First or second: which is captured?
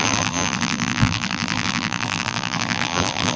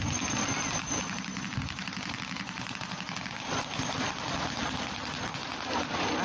second